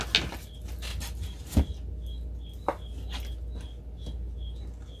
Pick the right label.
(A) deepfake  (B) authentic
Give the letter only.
B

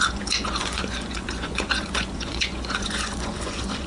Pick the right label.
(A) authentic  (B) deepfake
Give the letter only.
B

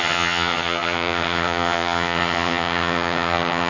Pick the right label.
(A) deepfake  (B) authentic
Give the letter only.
A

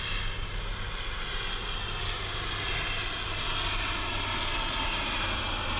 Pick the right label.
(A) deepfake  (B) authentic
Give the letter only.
B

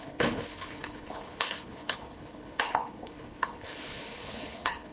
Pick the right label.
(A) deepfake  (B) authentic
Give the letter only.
A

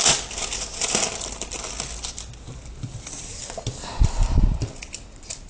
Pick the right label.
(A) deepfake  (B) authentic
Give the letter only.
B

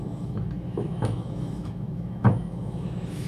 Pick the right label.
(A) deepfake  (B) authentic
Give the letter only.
A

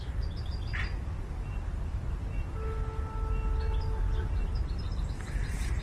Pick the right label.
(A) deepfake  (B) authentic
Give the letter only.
B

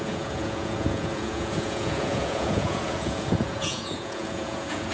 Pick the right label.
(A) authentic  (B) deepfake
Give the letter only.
B